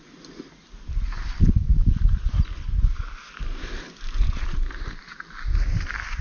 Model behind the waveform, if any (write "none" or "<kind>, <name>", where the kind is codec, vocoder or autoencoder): none